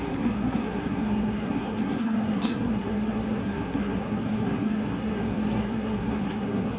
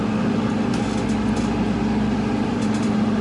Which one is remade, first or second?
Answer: first